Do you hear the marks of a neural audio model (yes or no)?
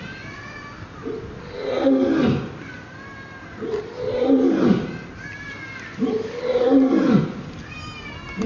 no